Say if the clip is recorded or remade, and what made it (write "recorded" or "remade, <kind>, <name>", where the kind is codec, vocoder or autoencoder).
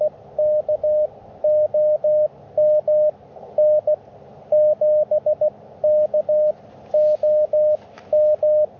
recorded